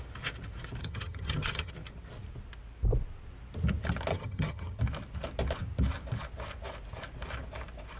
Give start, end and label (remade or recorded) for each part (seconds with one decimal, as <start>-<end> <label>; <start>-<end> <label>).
0.0-0.8 recorded; 0.8-1.7 remade; 1.7-4.1 recorded; 4.1-4.8 remade; 4.8-8.0 recorded

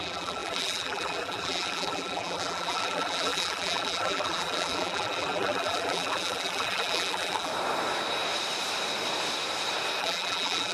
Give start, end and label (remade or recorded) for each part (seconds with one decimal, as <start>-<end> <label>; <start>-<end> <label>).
0.0-7.5 remade; 7.5-10.0 recorded; 10.0-10.7 remade

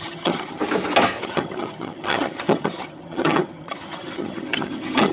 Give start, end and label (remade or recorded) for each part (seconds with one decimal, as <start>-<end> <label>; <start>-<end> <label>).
0.0-0.6 remade; 0.6-1.2 recorded; 1.2-5.1 remade

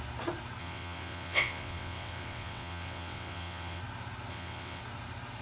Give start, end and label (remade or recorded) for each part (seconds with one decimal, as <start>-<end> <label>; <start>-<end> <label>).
0.0-0.6 recorded; 0.6-3.8 remade; 3.8-4.3 recorded; 4.3-4.8 remade; 4.8-5.4 recorded

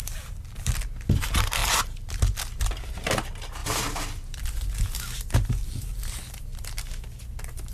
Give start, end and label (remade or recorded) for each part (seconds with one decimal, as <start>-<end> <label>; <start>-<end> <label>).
0.0-0.7 remade; 0.7-7.7 recorded

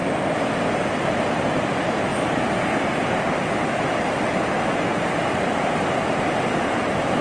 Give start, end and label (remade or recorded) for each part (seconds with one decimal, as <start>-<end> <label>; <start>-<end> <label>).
0.0-1.0 remade; 1.0-2.1 recorded; 2.1-4.3 remade; 4.3-7.2 recorded

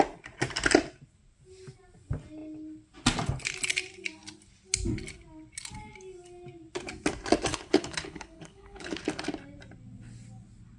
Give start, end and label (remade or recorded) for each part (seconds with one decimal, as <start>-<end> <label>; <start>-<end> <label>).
0.0-7.5 recorded; 7.5-9.0 remade; 9.0-10.8 recorded